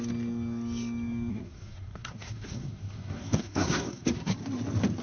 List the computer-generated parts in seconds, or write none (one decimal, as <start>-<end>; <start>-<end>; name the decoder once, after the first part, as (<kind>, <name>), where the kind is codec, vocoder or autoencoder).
1.3-4.3 (codec, SNAC)